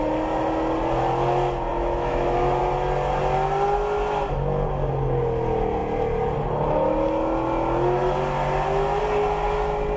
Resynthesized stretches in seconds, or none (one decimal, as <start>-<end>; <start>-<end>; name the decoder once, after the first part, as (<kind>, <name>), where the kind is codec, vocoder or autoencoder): 1.7-2.6 (autoencoder, DAC-VAE)